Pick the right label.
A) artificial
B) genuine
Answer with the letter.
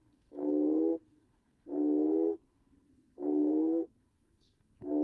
A